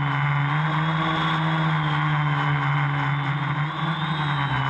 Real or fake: real